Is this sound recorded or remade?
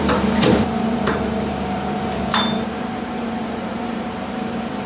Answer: remade